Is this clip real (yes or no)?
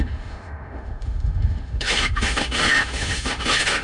no